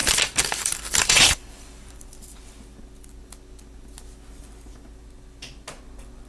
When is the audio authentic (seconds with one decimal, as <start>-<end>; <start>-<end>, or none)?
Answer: 2.4-6.3